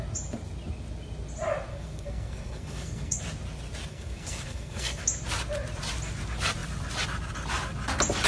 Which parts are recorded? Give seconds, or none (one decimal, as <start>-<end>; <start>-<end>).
0.0-1.7; 3.2-3.9; 5.0-8.3